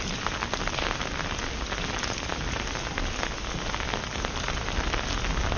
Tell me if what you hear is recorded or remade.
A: recorded